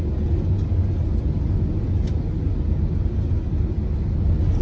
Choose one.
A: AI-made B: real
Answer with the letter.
B